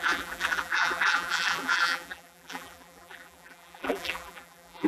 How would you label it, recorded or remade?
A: remade